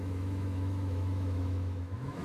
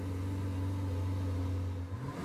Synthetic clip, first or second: first